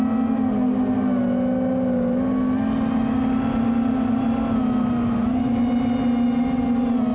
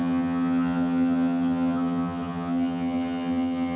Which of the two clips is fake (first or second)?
second